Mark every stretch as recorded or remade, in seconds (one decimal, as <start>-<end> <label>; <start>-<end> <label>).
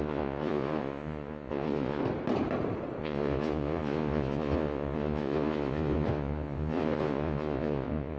0.0-2.0 remade; 2.0-3.0 recorded; 3.0-8.2 remade